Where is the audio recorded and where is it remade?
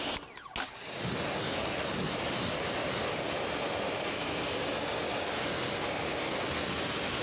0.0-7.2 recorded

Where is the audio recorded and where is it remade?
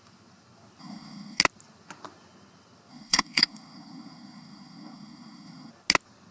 0.0-0.8 recorded; 0.8-1.4 remade; 1.4-2.9 recorded; 2.9-5.7 remade; 5.7-6.3 recorded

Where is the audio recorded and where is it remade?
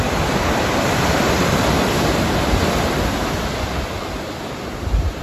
0.0-5.2 recorded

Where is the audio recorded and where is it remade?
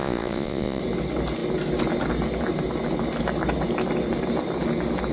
0.0-0.8 remade; 0.8-5.1 recorded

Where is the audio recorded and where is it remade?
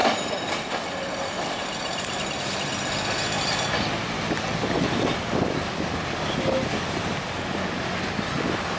0.0-4.5 remade; 4.5-7.7 recorded; 7.7-8.8 remade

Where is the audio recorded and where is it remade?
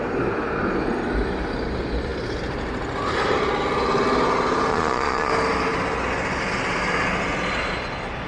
0.0-4.7 recorded; 4.7-5.3 remade; 5.3-8.3 recorded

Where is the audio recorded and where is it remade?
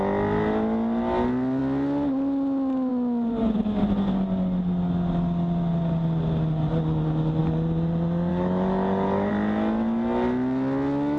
0.0-8.3 recorded; 8.3-9.3 remade; 9.3-11.2 recorded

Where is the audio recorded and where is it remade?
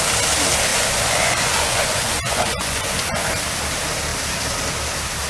0.0-0.7 recorded; 0.7-3.3 remade; 3.3-5.3 recorded